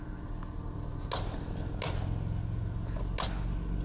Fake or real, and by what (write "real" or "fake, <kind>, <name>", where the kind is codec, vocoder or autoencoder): real